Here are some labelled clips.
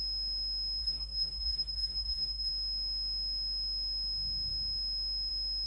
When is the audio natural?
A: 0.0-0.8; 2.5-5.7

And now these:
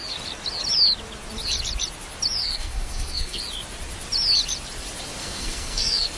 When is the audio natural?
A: 0.0-2.4; 3.4-5.2

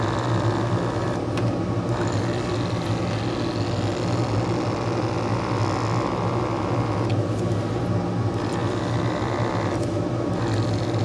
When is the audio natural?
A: 0.0-11.0

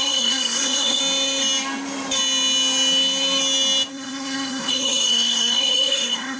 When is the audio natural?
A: 1.0-3.9

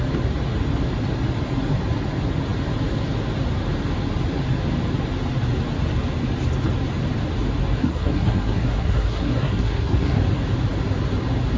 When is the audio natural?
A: 0.0-7.8; 10.2-11.6

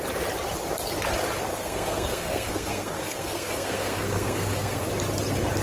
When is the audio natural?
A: 0.0-1.5; 4.9-5.6

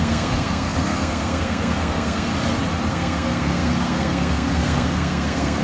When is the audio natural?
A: 2.3-2.9